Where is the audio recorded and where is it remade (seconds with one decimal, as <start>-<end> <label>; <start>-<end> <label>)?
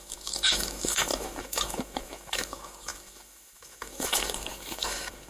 0.0-5.3 remade